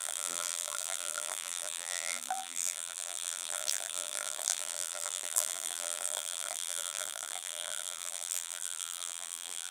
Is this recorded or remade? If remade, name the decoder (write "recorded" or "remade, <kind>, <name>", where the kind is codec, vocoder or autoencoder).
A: remade, vocoder, BigVGAN v2